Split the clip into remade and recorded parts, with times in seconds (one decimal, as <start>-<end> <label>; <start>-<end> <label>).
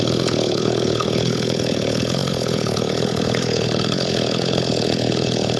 0.0-5.6 remade